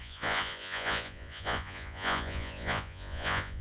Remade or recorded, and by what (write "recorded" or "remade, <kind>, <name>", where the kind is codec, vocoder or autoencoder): remade, vocoder, Vocos